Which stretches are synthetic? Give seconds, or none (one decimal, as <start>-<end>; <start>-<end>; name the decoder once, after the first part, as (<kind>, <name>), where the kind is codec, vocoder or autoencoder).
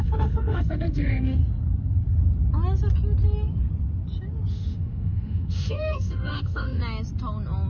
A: 0.0-1.4 (autoencoder, DAC-VAE); 4.5-6.8